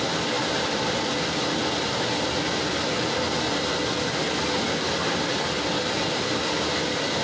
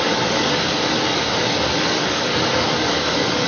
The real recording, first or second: first